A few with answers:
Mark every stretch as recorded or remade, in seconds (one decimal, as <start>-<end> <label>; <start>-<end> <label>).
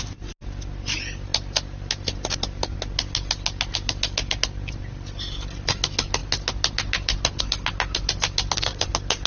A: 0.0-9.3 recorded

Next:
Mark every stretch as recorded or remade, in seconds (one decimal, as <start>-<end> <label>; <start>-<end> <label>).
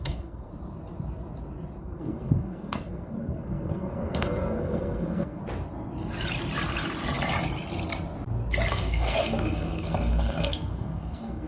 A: 0.0-0.5 remade; 0.5-1.8 recorded; 1.8-5.4 remade; 5.4-8.7 recorded; 8.7-11.5 remade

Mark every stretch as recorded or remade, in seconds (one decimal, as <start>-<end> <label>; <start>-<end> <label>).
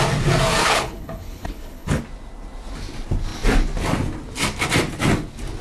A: 0.0-0.6 recorded; 0.6-2.0 remade; 2.0-5.6 recorded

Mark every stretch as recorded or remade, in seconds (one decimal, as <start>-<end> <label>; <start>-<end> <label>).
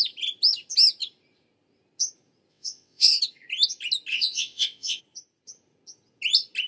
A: 0.0-2.5 recorded; 2.5-3.2 remade; 3.2-4.1 recorded; 4.1-5.0 remade; 5.0-6.7 recorded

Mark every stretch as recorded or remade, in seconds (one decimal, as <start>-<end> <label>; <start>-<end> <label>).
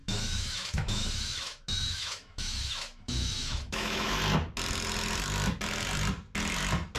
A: 0.0-4.2 remade; 4.2-7.0 recorded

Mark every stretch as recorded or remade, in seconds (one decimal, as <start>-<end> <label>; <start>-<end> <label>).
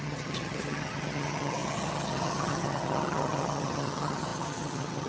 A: 0.0-5.1 remade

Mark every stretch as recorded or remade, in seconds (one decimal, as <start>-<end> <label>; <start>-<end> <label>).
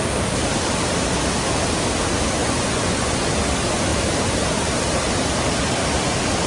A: 0.0-2.4 recorded; 2.4-3.2 remade; 3.2-6.5 recorded